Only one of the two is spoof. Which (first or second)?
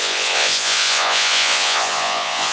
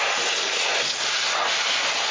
first